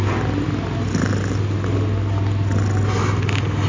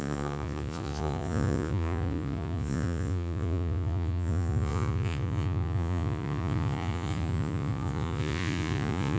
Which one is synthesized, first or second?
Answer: second